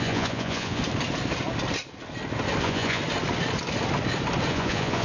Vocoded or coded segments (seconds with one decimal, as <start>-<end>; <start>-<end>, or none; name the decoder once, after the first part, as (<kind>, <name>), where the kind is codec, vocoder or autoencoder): 0.0-0.8 (vocoder, Vocos); 2.6-3.0; 4.5-5.0